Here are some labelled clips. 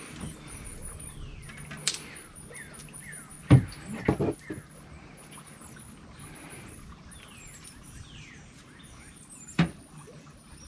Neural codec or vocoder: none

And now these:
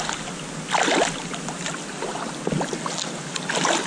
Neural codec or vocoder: none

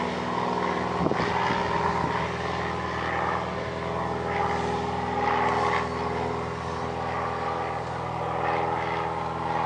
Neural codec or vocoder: none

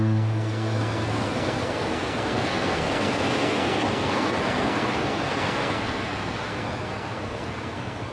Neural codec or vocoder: codec, SNAC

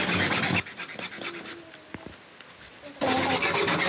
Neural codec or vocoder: none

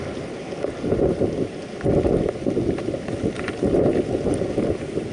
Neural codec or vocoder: none